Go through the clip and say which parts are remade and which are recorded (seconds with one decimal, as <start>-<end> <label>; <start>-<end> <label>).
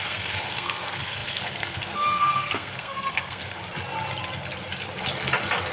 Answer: 0.0-3.6 remade; 3.6-5.7 recorded